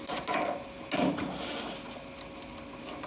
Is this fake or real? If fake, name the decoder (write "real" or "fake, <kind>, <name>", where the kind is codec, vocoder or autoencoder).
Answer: real